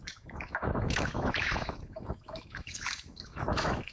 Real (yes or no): no